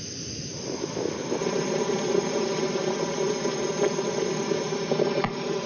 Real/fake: real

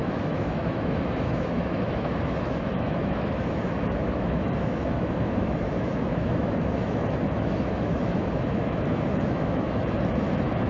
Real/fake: fake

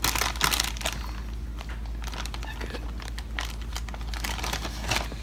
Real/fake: real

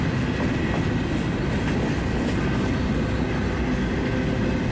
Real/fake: real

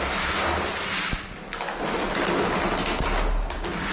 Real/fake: real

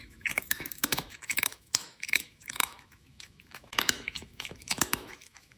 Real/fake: fake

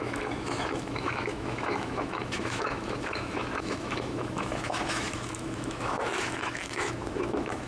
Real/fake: fake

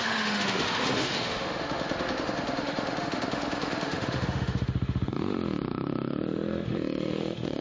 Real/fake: fake